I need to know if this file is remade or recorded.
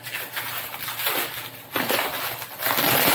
recorded